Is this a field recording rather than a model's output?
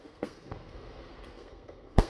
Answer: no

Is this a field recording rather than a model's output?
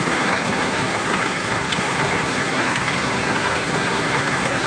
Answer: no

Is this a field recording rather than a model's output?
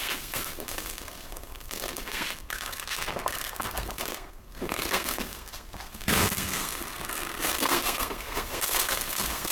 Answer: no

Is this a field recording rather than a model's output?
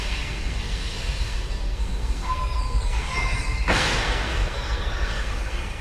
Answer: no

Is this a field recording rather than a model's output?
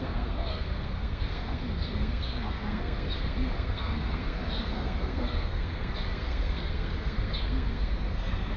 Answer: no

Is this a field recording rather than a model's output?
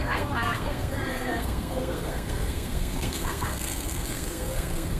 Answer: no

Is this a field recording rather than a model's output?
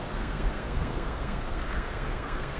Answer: no